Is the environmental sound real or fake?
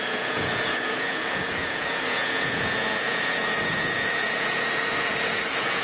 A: fake